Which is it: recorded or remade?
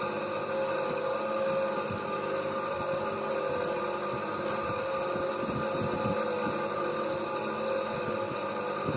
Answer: recorded